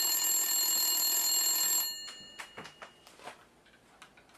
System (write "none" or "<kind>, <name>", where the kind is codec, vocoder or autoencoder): none